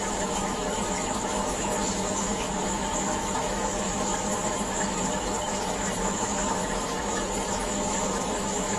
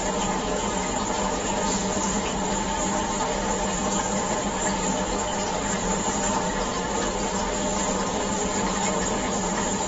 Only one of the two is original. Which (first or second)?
second